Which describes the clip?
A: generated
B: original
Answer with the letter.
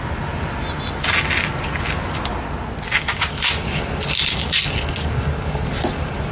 B